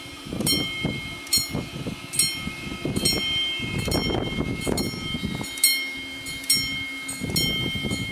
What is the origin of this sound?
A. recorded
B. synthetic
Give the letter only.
A